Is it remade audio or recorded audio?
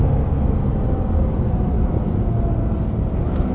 recorded